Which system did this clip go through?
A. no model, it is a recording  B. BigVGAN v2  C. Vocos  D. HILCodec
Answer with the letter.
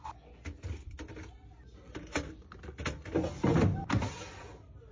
A